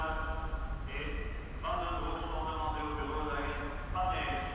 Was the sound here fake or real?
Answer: real